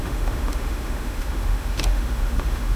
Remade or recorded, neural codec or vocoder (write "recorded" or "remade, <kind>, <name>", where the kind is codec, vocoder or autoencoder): remade, autoencoder, DAC-VAE